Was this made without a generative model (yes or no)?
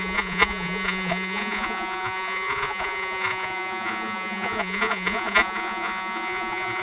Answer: no